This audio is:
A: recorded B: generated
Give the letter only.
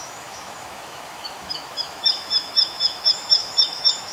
B